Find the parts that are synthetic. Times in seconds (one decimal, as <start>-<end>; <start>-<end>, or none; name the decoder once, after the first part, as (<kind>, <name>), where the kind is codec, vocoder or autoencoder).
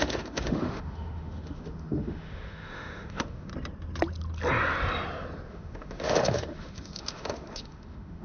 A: 0.0-3.5 (autoencoder, DAC-VAE); 5.5-8.2